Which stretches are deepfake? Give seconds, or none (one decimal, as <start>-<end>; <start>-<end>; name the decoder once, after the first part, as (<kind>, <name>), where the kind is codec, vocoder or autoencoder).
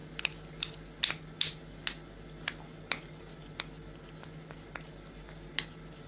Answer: none